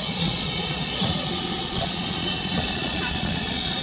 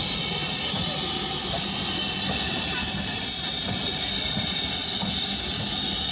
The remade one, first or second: first